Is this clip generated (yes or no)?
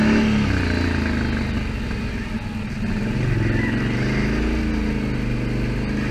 no